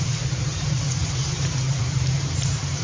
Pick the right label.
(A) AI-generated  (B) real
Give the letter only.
A